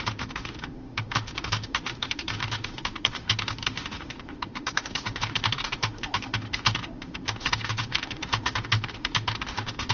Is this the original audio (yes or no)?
no